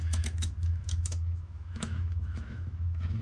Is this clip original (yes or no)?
no